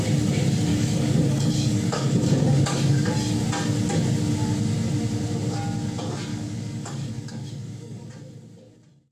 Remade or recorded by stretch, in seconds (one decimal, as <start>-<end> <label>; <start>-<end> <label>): 0.0-0.7 recorded; 0.7-3.1 remade; 3.1-6.3 recorded; 6.3-8.1 remade; 8.1-9.1 recorded